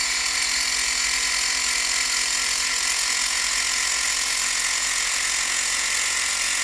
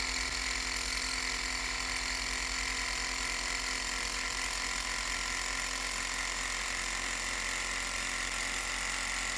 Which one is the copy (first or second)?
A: first